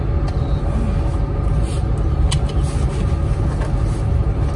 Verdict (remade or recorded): recorded